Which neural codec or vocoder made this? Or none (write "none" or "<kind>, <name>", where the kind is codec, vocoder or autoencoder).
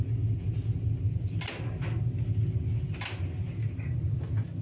none